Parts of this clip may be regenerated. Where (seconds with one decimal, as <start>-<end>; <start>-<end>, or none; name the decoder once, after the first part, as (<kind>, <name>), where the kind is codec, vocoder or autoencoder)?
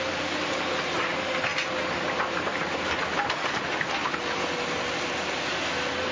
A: none